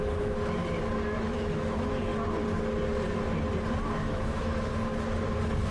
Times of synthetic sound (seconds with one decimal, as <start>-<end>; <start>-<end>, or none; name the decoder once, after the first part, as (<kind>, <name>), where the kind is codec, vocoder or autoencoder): 0.0-0.6 (autoencoder, DAC-VAE); 1.1-2.1; 4.0-4.7